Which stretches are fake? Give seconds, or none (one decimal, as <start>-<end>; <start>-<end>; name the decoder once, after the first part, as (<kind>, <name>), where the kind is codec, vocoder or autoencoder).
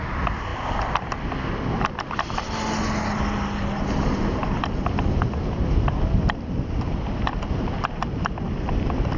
none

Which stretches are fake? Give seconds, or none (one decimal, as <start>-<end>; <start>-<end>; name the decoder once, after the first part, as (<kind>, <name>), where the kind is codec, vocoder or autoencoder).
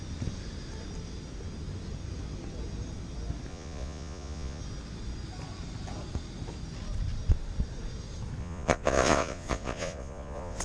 3.5-4.6 (vocoder, Vocos); 8.4-10.6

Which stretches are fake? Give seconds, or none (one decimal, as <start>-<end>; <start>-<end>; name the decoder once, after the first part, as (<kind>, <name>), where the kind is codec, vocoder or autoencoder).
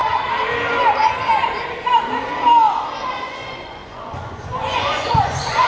3.2-5.7 (vocoder, Vocos)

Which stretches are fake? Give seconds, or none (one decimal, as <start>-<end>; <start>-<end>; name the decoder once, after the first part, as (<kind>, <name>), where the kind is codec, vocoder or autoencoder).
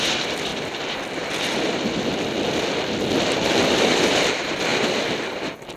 0.0-0.5 (vocoder, BigVGAN v2); 1.4-2.1; 3.6-4.7